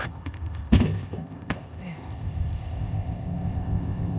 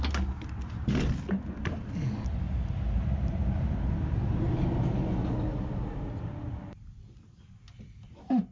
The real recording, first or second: second